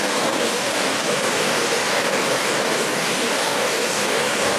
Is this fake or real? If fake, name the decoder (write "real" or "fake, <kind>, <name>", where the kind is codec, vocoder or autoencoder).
fake, codec, DAC